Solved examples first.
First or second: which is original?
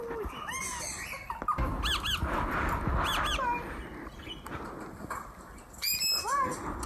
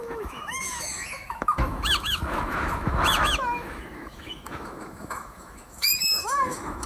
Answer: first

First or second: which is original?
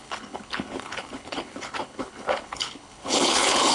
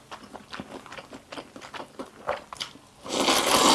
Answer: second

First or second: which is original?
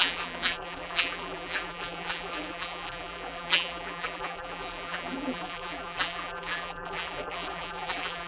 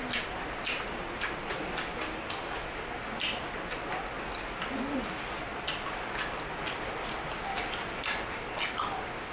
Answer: second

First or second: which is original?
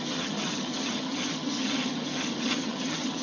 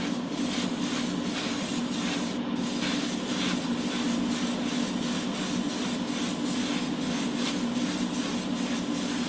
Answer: second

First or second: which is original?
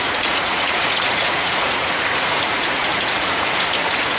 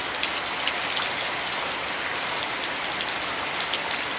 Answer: second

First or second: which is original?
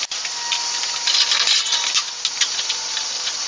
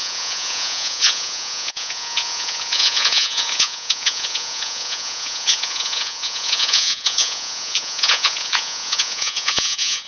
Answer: first